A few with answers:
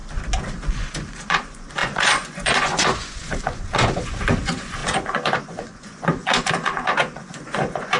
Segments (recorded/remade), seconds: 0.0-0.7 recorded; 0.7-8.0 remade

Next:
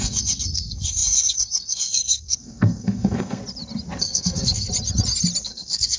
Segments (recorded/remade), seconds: 0.0-3.4 remade; 3.4-4.0 recorded; 4.0-4.7 remade; 4.7-5.4 recorded; 5.4-6.0 remade

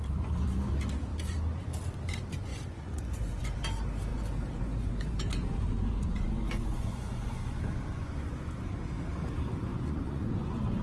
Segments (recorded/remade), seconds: 0.0-2.5 recorded; 2.5-3.6 remade; 3.6-4.1 recorded; 4.1-8.6 remade; 8.6-9.7 recorded; 9.7-10.8 remade

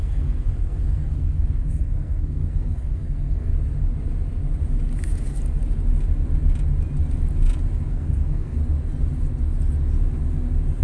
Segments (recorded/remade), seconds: 0.0-3.5 remade; 3.5-7.9 recorded; 7.9-8.6 remade; 8.6-10.8 recorded

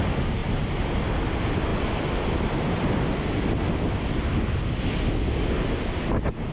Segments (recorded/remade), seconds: 0.0-0.4 recorded; 0.4-1.0 remade; 1.0-6.5 recorded

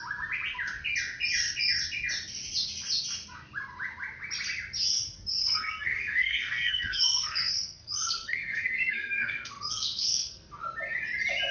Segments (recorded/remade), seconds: 0.0-5.4 recorded; 5.4-10.5 remade; 10.5-11.5 recorded

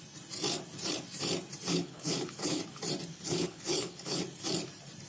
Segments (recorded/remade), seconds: 0.0-1.7 recorded; 1.7-2.6 remade; 2.6-3.1 recorded; 3.1-4.2 remade; 4.2-5.1 recorded

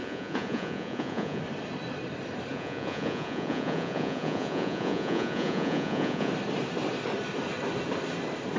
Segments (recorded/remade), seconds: 0.0-1.4 remade; 1.4-2.5 recorded; 2.5-6.3 remade; 6.3-8.6 recorded